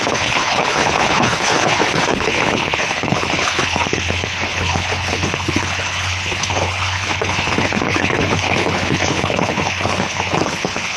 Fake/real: fake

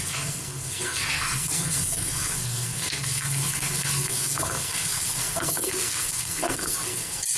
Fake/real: fake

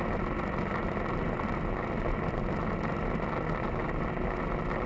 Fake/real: real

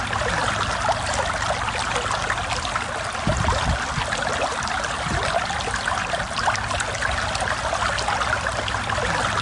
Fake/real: real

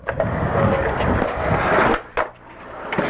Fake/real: real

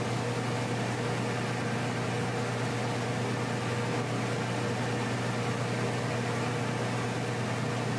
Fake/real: real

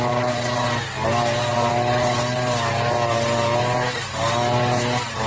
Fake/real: real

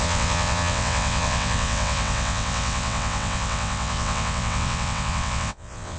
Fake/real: fake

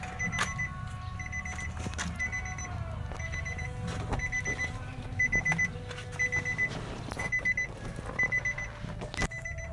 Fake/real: real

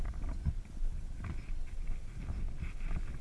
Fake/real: real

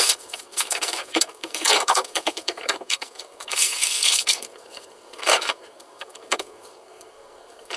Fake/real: fake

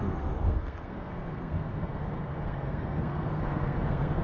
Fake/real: fake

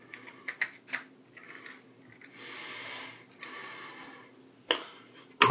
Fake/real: real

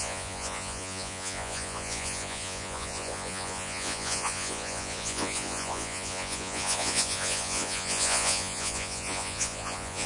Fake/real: fake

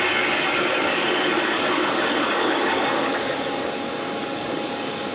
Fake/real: fake